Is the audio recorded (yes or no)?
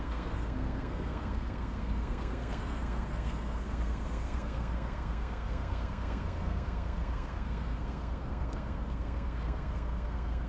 no